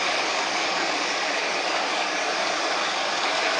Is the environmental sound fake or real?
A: fake